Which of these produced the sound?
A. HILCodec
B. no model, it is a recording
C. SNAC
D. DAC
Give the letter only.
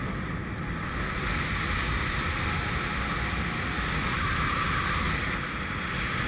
B